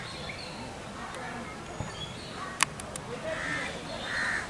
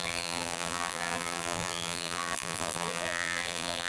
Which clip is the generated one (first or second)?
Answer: second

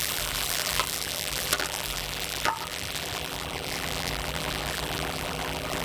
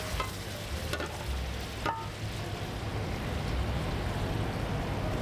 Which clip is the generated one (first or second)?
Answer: first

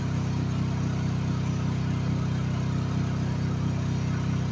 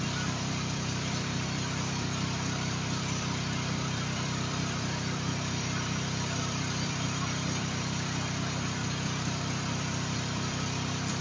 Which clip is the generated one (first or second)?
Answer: second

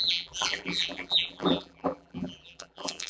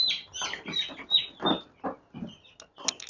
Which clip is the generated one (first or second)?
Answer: first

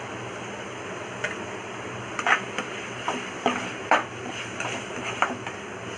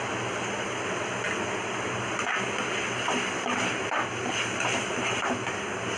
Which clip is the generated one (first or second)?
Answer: first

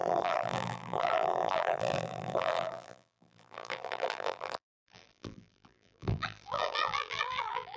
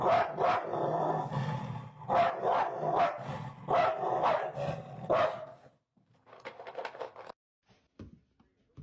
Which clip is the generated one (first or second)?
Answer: first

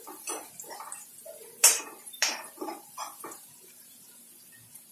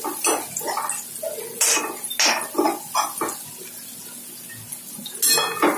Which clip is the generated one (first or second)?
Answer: first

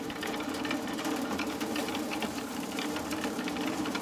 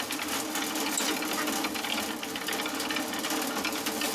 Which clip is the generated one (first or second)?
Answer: first